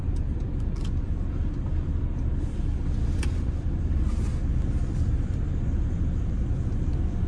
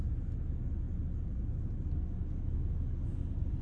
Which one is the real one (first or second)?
second